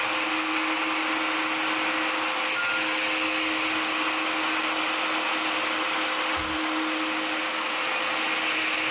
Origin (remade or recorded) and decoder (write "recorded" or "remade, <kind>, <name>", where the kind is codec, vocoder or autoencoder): recorded